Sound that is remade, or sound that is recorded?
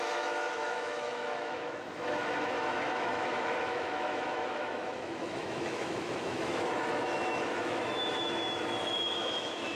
remade